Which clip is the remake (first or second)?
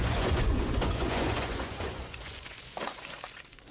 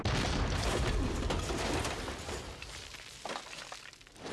first